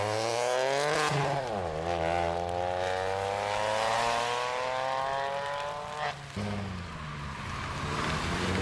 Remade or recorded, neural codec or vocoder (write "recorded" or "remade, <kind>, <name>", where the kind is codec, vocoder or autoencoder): recorded